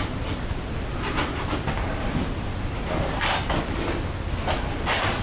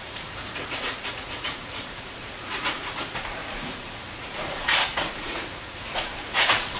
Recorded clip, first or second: first